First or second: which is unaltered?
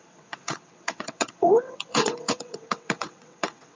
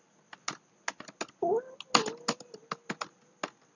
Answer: second